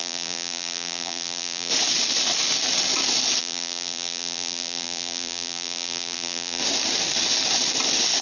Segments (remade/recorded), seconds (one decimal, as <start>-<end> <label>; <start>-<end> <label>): 0.0-1.7 remade; 1.7-3.4 recorded; 3.4-6.6 remade; 6.6-8.2 recorded